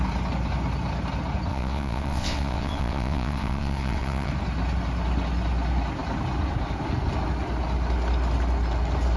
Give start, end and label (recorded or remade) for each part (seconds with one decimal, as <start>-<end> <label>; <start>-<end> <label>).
0.0-1.5 recorded; 1.5-4.3 remade; 4.3-9.2 recorded